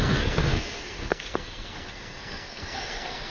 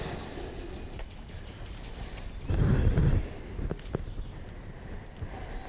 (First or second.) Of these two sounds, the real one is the second